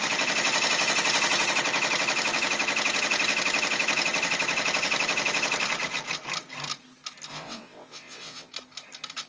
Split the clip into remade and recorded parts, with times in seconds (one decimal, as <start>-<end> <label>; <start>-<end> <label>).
0.0-7.3 recorded; 7.3-8.5 remade; 8.5-9.3 recorded